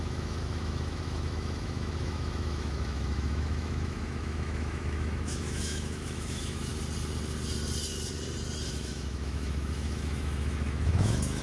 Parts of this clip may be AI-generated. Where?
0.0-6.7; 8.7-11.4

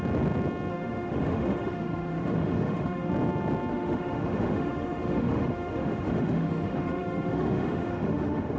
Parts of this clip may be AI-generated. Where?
0.7-3.1; 3.7-8.6